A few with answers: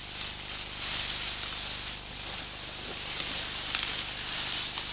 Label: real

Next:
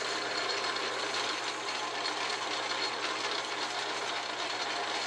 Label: real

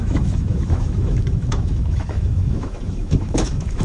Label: fake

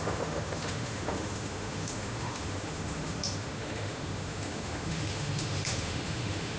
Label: fake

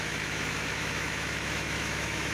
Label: fake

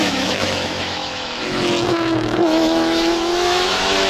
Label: fake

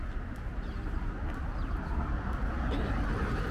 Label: real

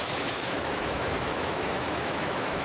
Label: fake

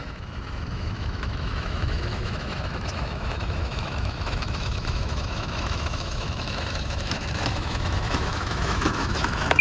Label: fake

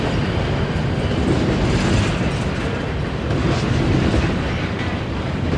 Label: real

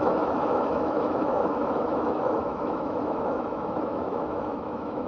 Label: fake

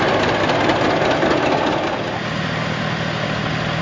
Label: real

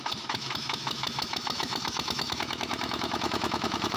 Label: fake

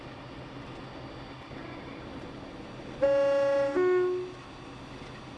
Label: real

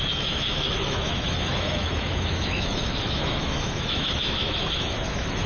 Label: fake